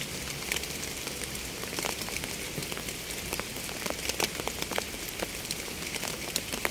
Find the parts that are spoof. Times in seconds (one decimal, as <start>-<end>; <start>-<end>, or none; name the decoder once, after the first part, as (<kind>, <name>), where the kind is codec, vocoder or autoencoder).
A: none